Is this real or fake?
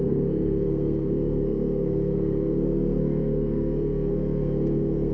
fake